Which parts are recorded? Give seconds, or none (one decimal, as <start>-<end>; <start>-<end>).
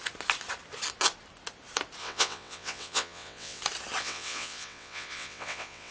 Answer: 0.0-2.0; 3.6-4.0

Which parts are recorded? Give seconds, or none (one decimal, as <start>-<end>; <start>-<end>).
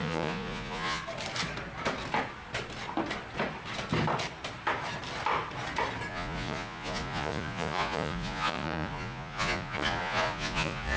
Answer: 1.0-6.1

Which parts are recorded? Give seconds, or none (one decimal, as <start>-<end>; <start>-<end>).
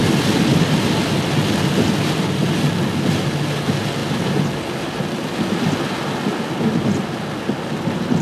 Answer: 0.0-8.2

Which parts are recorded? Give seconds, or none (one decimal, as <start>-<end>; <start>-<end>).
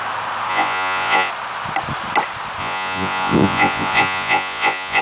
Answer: 0.0-0.5; 1.3-2.6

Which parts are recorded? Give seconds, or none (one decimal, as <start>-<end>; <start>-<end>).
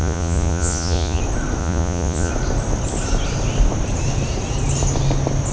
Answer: 1.2-1.6; 2.3-5.5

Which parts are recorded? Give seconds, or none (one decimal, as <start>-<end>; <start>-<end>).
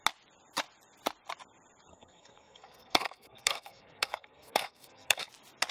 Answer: 0.0-1.9; 5.3-5.7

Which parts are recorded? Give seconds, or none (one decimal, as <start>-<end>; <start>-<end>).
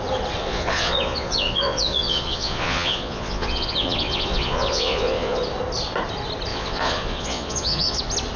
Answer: 0.0-0.4; 5.4-6.5; 8.0-8.4